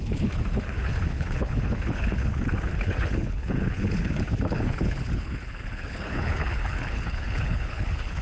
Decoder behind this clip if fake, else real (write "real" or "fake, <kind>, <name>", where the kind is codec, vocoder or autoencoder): fake, codec, HILCodec